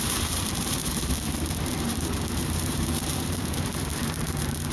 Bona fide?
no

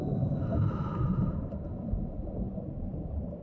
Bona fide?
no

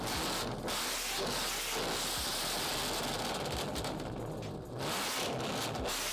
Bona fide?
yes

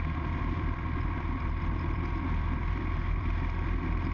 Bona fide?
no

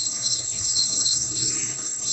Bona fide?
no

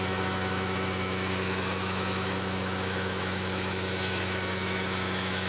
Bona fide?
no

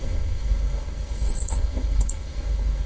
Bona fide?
no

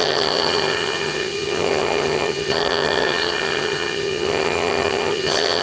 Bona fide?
no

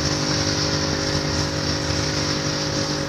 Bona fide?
yes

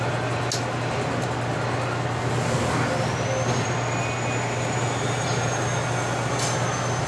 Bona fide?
yes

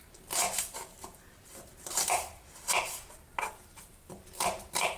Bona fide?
no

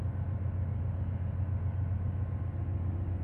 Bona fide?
yes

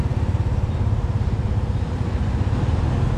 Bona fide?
yes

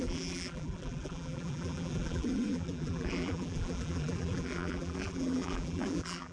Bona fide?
no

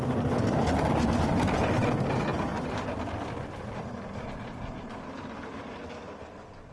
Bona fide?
yes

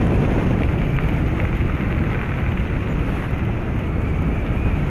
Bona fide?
yes